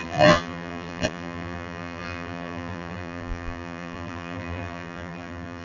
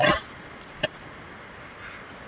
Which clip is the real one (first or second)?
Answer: second